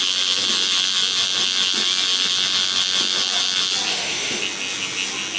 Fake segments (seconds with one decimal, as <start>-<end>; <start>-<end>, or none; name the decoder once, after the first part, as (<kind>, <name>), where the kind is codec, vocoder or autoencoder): 3.9-4.4 (autoencoder, DAC-VAE)